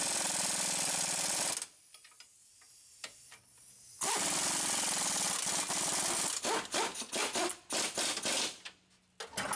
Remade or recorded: recorded